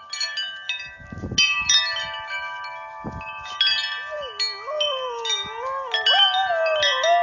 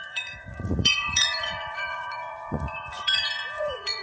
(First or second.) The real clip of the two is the first